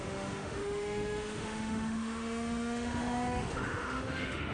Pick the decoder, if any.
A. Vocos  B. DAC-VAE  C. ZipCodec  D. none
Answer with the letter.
B